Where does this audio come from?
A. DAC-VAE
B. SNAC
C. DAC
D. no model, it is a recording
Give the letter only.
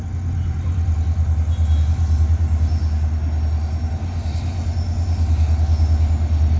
D